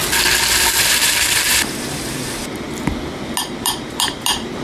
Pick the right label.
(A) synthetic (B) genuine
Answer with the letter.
B